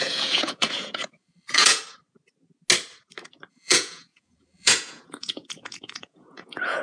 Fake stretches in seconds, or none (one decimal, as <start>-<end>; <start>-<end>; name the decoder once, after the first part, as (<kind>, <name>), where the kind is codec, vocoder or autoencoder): 0.0-1.8 (vocoder, Vocos); 3.5-6.8